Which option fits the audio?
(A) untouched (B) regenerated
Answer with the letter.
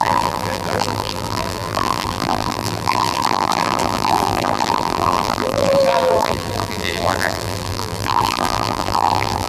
B